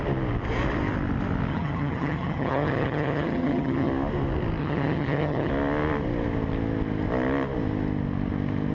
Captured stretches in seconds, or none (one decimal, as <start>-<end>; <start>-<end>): 0.0-1.5; 3.9-4.6; 5.5-8.7